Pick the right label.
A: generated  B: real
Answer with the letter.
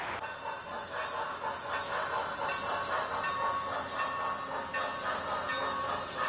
B